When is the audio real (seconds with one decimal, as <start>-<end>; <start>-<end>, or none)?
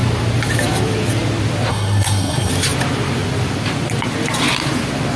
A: 0.0-1.7; 2.5-5.2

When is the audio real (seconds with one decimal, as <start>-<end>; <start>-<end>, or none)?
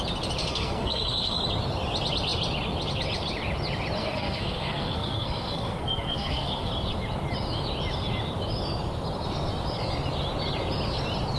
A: 0.0-0.4; 1.4-4.0; 6.7-11.4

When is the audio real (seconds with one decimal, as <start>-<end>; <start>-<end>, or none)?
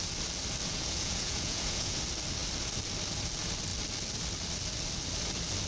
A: 0.0-0.6; 2.0-5.7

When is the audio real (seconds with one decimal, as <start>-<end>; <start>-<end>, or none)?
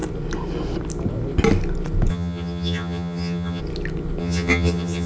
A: 0.0-2.1; 3.6-4.2